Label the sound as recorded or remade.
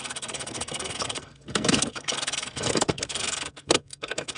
remade